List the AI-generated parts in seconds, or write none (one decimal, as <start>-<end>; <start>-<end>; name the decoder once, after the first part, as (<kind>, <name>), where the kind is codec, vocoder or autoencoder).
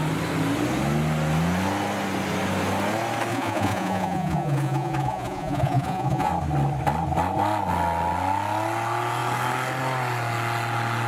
3.3-6.3 (vocoder, Vocos)